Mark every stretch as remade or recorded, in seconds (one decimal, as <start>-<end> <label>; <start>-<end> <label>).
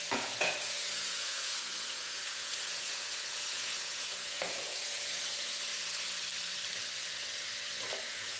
0.0-5.7 remade; 5.7-8.0 recorded; 8.0-8.4 remade